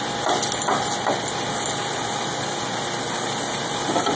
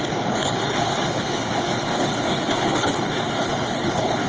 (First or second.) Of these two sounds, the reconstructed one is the second